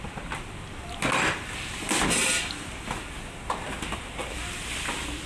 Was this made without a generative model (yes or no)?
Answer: yes